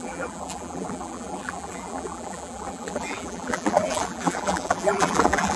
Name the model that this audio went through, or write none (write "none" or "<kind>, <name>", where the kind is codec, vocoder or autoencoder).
vocoder, BigVGAN v2